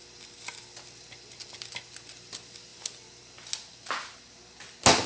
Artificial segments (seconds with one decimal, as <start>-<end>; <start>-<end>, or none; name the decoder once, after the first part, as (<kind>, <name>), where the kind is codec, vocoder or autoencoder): none

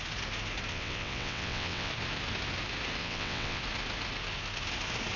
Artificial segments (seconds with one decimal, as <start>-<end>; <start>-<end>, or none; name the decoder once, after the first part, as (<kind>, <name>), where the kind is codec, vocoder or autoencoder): 0.7-1.9 (vocoder, WaveNeXt); 3.0-3.6